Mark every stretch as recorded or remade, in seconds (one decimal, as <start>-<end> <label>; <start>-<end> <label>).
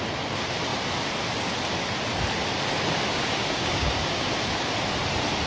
0.0-3.2 recorded; 3.2-4.3 remade; 4.3-5.5 recorded